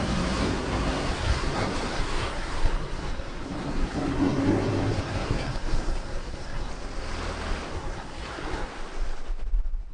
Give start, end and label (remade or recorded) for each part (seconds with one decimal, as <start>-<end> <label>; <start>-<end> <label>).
0.0-6.7 remade; 6.7-7.7 recorded; 7.7-8.7 remade; 8.7-9.9 recorded